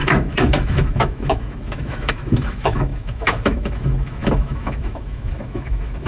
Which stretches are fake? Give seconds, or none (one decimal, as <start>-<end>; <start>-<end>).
0.0-6.1